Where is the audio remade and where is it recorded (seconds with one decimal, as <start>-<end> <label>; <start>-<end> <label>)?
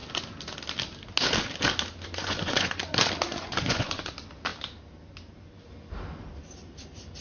0.0-2.2 recorded; 2.2-2.8 remade; 2.8-3.4 recorded; 3.4-4.1 remade; 4.1-7.2 recorded